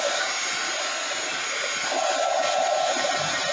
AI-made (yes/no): no